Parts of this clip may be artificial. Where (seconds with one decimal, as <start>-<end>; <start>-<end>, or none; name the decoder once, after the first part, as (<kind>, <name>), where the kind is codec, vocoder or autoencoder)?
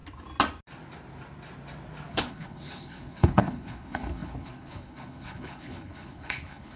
2.1-6.8 (codec, HILCodec)